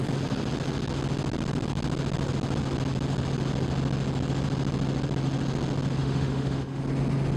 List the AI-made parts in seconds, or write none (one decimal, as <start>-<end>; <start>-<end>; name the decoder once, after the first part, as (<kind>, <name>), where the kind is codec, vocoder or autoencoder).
6.0-6.8 (autoencoder, DAC-VAE)